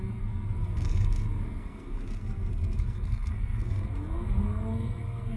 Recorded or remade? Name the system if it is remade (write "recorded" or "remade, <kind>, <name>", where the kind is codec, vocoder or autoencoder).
remade, codec, SNAC